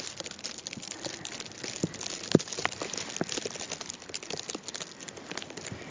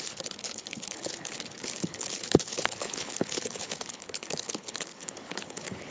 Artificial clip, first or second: second